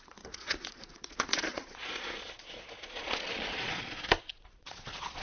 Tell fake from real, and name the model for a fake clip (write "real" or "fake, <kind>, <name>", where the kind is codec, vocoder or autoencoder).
fake, vocoder, Vocos